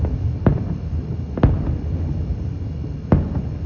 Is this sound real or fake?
real